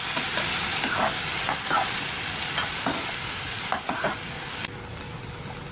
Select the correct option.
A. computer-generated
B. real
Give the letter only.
B